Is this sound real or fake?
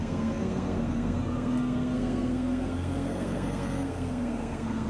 fake